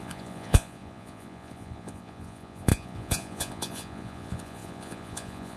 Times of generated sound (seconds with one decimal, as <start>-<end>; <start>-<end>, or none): 0.0-5.6